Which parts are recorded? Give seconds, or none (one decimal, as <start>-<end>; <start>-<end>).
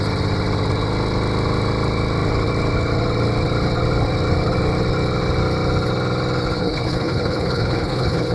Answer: 0.0-6.6